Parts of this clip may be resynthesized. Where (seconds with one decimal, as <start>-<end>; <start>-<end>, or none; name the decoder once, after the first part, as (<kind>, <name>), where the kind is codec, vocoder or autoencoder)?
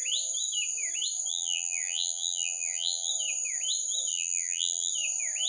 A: 1.3-3.1 (vocoder, BigVGAN v2); 4.1-4.9